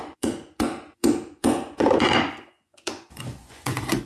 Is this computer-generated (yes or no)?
yes